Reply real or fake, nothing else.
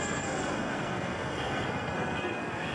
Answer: fake